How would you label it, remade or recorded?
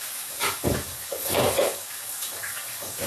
remade